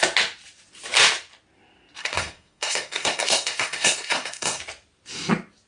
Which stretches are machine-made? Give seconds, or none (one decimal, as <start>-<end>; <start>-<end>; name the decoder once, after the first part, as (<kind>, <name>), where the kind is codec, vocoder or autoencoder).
2.0-4.6 (codec, SNAC)